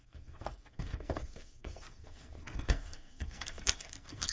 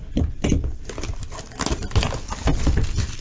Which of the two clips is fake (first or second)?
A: first